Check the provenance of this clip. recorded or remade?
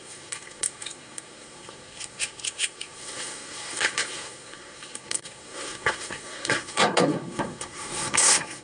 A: remade